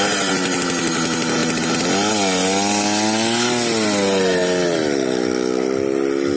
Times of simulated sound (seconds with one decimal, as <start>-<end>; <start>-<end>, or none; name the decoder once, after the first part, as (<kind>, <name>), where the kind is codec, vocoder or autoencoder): none